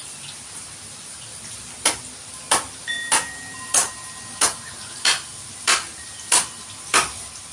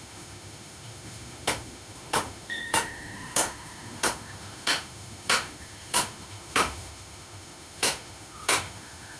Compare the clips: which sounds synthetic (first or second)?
second